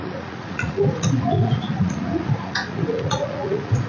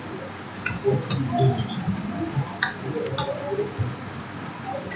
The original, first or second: second